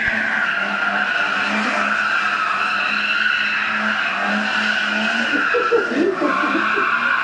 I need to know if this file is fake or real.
real